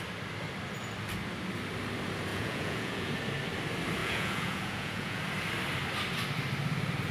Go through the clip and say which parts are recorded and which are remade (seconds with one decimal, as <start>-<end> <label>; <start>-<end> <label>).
0.0-2.3 recorded; 2.3-3.1 remade; 3.1-4.0 recorded; 4.0-5.2 remade; 5.2-7.1 recorded